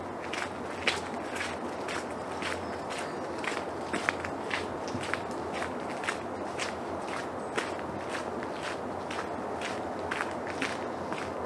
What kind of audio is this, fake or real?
real